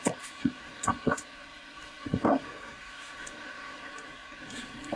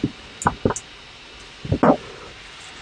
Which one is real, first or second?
second